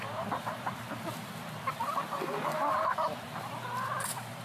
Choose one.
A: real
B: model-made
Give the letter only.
B